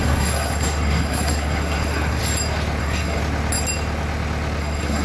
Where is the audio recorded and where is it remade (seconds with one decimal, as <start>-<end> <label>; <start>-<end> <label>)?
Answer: 0.0-2.2 remade; 2.2-2.8 recorded; 2.8-3.2 remade; 3.2-4.6 recorded; 4.6-5.0 remade